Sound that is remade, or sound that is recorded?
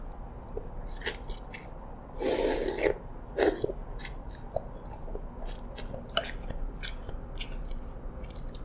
recorded